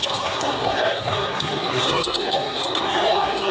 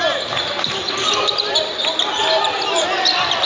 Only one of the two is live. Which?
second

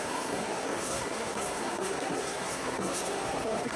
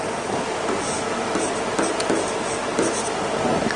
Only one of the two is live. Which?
second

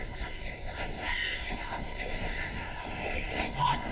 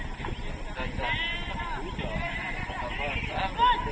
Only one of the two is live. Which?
second